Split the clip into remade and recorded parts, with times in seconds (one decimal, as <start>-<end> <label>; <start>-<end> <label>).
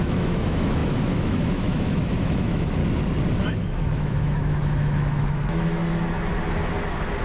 0.0-2.8 remade; 2.8-3.4 recorded; 3.4-5.8 remade; 5.8-7.2 recorded